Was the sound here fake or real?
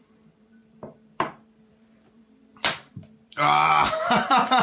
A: fake